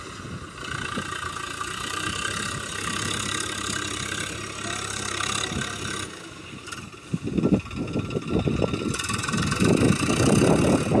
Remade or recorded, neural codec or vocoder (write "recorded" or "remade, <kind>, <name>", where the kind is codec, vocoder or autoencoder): recorded